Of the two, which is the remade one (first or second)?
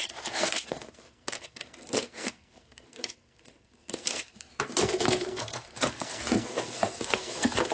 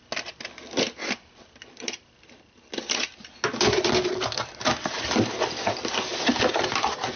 first